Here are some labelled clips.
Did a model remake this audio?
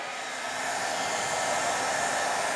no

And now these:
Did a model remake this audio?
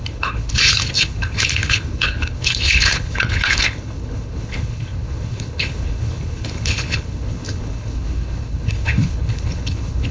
yes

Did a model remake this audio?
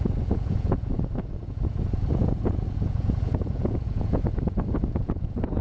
yes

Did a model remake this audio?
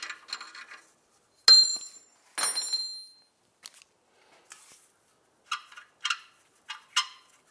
no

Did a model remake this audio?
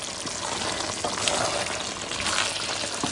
no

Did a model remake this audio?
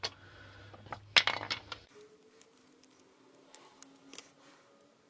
no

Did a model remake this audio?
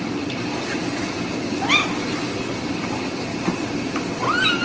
no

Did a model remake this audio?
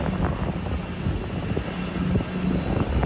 no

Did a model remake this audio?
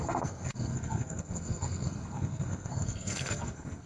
yes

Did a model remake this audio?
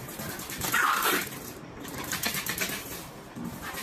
yes